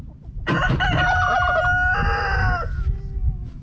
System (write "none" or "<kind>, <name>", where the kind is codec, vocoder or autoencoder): none